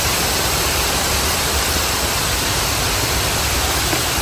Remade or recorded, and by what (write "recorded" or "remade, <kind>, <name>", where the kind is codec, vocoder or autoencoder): remade, vocoder, BigVGAN v2